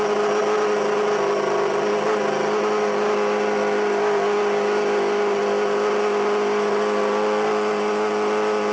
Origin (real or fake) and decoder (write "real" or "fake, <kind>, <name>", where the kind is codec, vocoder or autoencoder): real